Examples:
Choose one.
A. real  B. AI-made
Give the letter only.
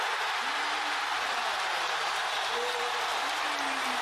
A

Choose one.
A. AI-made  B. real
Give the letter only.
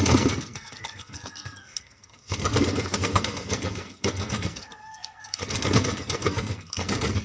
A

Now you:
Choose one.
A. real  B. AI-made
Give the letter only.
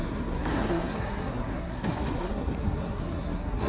B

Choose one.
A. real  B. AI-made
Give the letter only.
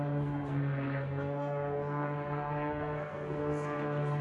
B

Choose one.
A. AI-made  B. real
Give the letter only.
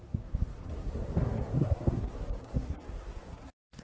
A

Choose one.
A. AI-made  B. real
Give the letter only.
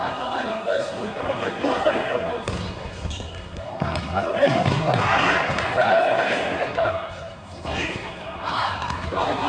A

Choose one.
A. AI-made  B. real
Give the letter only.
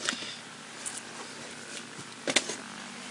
B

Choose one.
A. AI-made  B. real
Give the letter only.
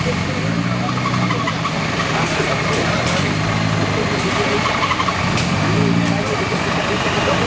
B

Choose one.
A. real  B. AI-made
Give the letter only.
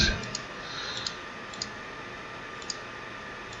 A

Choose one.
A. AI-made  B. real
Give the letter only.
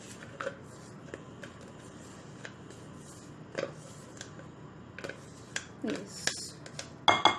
B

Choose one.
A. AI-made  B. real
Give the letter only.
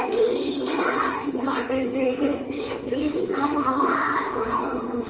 A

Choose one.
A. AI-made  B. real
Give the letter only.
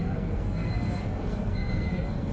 A